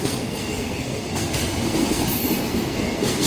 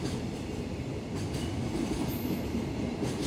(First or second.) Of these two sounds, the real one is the second